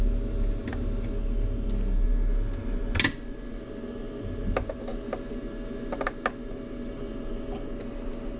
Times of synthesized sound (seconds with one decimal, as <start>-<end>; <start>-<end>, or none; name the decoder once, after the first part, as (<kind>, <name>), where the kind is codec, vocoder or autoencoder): none